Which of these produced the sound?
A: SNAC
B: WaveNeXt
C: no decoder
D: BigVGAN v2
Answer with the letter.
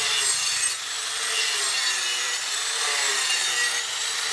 D